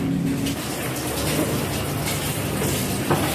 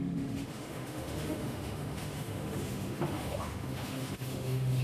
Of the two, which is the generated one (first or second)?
second